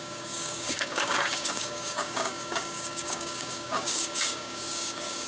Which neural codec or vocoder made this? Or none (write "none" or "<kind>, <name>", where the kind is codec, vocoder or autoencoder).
codec, DAC